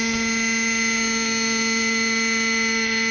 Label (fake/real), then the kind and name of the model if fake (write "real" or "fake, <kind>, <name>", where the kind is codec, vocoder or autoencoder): real